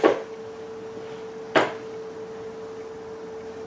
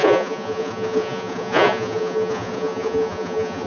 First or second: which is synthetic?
second